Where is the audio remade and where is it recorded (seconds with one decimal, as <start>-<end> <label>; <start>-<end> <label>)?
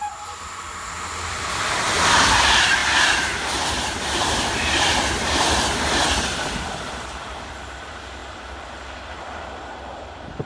0.0-0.7 remade; 0.7-1.3 recorded; 1.3-10.5 remade